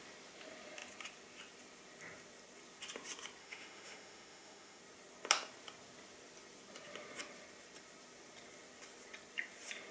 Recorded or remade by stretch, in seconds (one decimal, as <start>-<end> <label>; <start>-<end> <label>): 0.0-3.4 recorded; 3.4-4.8 remade; 4.8-9.9 recorded